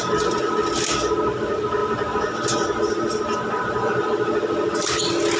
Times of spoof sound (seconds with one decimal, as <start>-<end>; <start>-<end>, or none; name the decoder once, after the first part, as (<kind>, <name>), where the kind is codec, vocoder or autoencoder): none